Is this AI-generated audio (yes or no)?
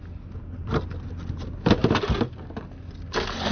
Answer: no